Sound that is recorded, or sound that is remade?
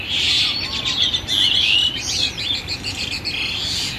recorded